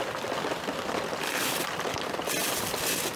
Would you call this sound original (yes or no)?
yes